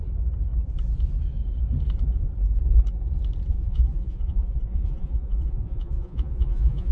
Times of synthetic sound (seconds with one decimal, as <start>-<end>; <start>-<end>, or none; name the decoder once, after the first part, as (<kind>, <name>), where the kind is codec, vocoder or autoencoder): 3.5-6.9 (vocoder, Vocos)